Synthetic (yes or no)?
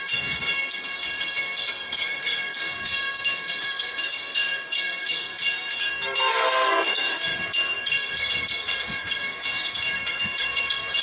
yes